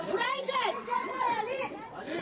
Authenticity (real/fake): fake